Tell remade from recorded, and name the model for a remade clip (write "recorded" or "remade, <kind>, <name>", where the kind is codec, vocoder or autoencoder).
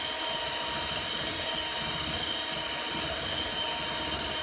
recorded